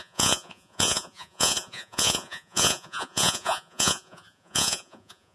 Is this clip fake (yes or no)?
yes